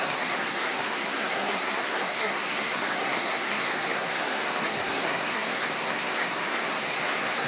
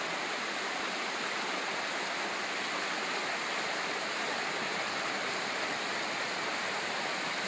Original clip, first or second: second